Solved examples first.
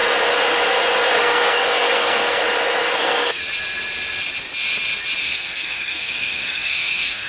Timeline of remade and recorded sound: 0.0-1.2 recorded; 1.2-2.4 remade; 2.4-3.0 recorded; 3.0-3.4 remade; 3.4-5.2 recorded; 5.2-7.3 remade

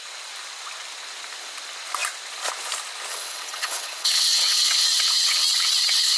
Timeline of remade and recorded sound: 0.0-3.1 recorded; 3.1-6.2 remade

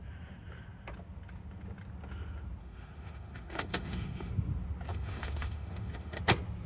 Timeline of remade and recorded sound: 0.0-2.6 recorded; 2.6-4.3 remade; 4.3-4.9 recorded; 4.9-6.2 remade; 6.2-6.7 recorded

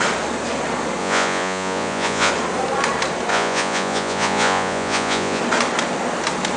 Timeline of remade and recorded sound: 0.0-1.0 recorded; 1.0-2.3 remade; 2.3-3.3 recorded; 3.3-5.4 remade; 5.4-6.6 recorded

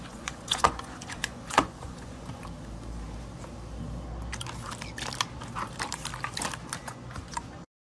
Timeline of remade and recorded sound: 0.0-2.4 remade; 2.4-6.8 recorded; 6.8-7.8 remade

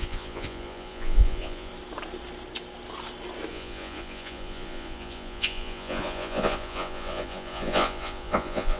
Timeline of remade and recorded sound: 0.0-1.7 remade; 1.7-3.5 recorded; 3.5-8.8 remade

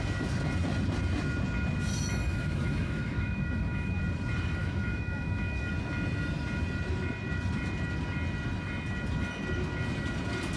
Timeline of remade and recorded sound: 0.0-2.3 recorded; 2.3-4.0 remade; 4.0-4.6 recorded; 4.6-5.7 remade; 5.7-10.6 recorded